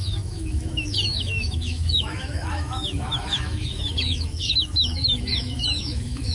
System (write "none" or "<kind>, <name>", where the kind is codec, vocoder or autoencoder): autoencoder, DAC-VAE